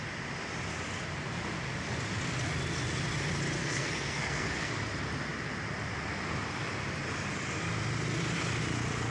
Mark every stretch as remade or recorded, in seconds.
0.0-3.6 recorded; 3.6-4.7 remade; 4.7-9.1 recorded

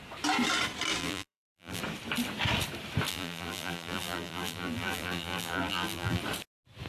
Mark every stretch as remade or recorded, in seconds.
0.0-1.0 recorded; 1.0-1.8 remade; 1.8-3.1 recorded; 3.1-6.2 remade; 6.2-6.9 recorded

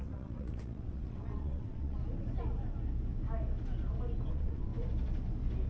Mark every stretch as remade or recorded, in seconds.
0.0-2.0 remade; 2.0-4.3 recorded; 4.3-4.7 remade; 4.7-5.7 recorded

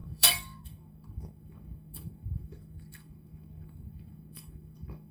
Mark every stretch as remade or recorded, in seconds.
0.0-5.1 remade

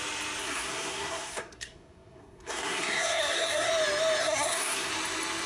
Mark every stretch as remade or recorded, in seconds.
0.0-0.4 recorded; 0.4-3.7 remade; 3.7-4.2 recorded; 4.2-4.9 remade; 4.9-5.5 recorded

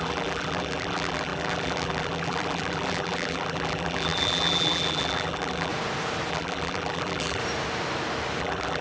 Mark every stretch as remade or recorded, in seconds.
0.0-5.7 remade; 5.7-6.3 recorded; 6.3-7.4 remade; 7.4-8.4 recorded; 8.4-8.8 remade

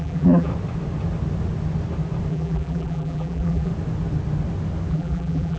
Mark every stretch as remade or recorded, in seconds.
0.0-0.5 remade; 0.5-2.3 recorded; 2.3-3.7 remade; 3.7-4.9 recorded; 4.9-5.6 remade

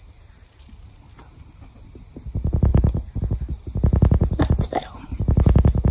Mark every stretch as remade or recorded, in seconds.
0.0-5.9 recorded